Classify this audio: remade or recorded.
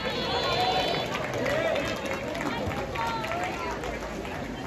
recorded